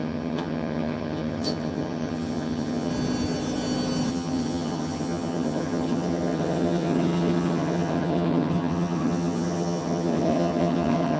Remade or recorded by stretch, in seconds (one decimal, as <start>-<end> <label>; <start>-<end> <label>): 0.0-2.9 remade; 2.9-4.1 recorded; 4.1-11.2 remade